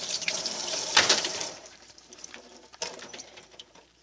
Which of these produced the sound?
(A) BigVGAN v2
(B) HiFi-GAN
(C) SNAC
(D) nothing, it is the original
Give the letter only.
A